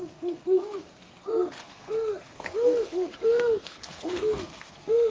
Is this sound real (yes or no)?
no